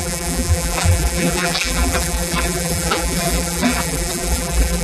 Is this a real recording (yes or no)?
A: no